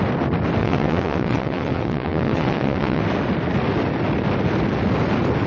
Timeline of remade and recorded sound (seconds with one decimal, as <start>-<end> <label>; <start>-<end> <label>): 0.0-0.6 recorded; 0.6-3.0 remade; 3.0-5.5 recorded